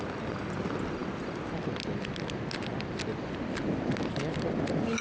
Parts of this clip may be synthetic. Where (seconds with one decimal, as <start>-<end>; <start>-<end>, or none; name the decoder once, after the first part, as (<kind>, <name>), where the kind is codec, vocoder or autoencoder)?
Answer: none